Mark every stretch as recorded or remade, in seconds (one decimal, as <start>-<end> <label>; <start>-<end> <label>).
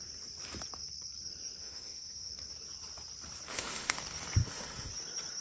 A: 0.0-1.6 recorded; 1.6-2.3 remade; 2.3-3.5 recorded; 3.5-4.0 remade; 4.0-4.4 recorded; 4.4-4.9 remade; 4.9-5.4 recorded